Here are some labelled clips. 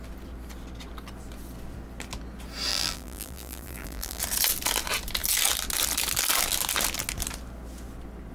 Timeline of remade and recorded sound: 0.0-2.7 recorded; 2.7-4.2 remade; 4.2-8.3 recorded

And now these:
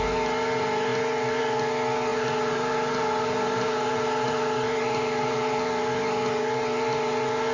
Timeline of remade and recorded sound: 0.0-2.1 recorded; 2.1-5.6 remade; 5.6-7.5 recorded

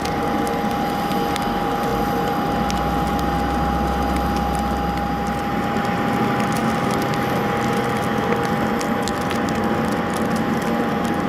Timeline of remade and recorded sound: 0.0-11.3 recorded